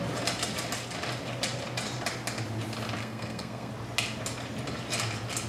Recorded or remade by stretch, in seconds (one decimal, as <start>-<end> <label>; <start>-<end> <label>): 0.0-3.0 recorded; 3.0-3.7 remade; 3.7-5.5 recorded